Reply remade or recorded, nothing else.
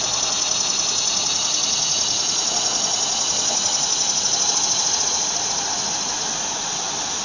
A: recorded